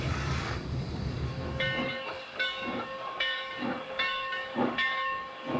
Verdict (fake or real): fake